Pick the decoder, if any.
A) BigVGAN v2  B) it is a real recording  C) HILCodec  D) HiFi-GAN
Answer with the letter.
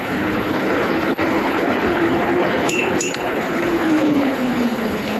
C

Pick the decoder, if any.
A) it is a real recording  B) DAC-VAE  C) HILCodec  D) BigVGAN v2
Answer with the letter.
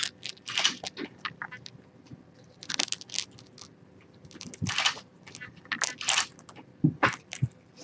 A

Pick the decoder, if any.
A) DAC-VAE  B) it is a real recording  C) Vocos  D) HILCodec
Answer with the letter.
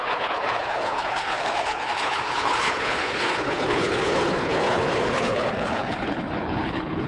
D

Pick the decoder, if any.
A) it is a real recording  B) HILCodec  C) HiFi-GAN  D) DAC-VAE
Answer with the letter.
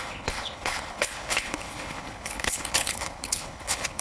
B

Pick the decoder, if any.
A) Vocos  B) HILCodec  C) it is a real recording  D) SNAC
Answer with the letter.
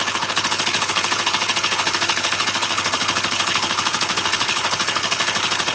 B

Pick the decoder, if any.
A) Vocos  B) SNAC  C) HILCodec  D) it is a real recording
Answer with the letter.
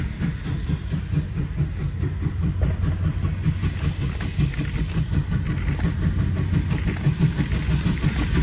D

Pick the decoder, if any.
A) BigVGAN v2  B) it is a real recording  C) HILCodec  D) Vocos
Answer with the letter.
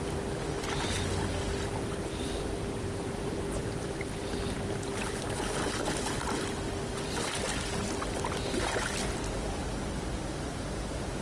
B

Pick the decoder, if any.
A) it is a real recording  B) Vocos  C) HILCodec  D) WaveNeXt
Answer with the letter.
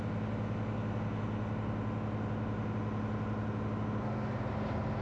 A